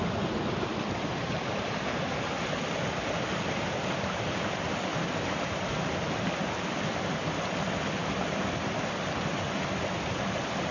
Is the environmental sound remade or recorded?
recorded